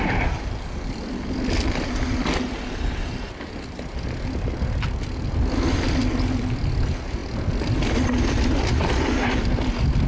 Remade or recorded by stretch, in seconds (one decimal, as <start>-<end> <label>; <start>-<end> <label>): 0.0-10.1 recorded